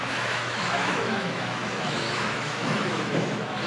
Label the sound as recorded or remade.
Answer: remade